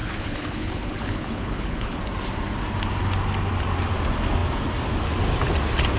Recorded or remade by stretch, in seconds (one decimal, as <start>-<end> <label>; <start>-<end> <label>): 0.0-2.0 remade; 2.0-6.0 recorded

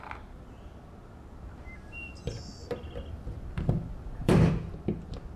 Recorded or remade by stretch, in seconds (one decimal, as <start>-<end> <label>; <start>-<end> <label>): 0.0-2.6 recorded; 2.6-4.5 remade; 4.5-5.4 recorded